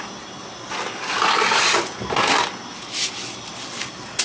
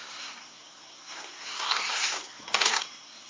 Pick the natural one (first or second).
first